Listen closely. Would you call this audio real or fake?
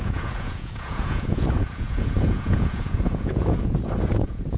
fake